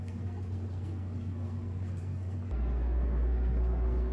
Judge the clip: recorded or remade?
remade